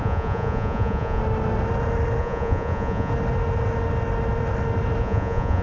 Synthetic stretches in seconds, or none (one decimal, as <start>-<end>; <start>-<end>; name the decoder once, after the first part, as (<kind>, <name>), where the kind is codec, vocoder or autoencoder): 0.0-1.2 (vocoder, Vocos); 2.2-3.1; 5.0-5.6